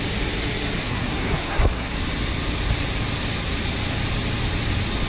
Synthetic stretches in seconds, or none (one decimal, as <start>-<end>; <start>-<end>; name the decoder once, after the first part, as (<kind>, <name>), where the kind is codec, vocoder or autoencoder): 0.8-1.9 (codec, SNAC)